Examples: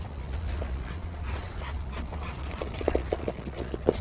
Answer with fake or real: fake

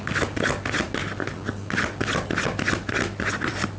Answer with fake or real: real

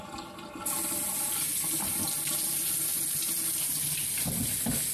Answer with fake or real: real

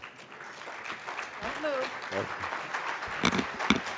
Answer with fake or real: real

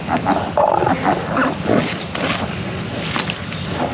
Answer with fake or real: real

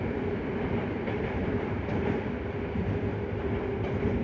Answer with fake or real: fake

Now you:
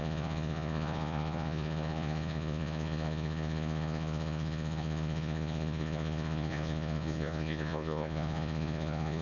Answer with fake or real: fake